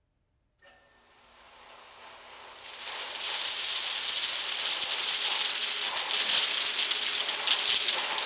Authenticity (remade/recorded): recorded